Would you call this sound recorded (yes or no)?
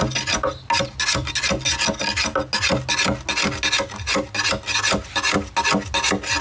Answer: yes